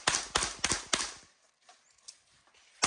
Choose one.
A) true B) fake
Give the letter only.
A